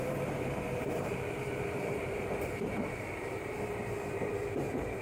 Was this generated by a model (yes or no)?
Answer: yes